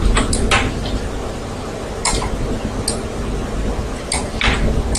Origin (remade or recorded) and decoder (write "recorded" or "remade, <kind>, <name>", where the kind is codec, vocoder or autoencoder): recorded